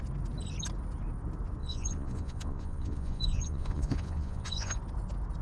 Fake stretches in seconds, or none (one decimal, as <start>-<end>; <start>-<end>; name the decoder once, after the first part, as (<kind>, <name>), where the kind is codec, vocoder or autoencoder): 1.6-4.8 (vocoder, Vocos)